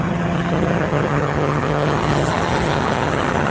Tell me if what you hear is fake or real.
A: fake